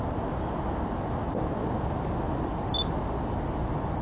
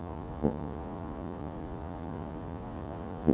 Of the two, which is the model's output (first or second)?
second